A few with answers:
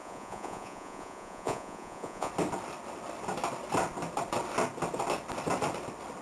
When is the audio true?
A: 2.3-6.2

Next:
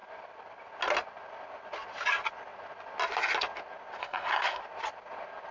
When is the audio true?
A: 0.0-4.0; 4.6-5.5

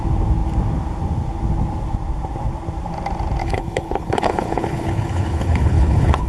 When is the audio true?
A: 0.0-3.4

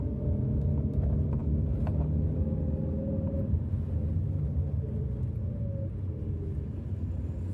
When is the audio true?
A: 0.0-7.5

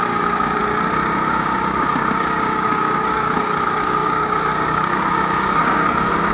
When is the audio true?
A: 0.6-1.3